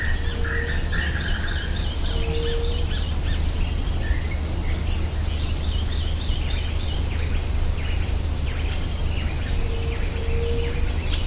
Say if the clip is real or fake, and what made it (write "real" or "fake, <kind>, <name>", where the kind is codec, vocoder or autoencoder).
real